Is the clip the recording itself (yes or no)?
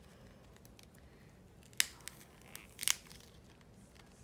yes